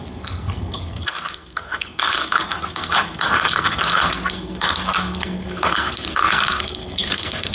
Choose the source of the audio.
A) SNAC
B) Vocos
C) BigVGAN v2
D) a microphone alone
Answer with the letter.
A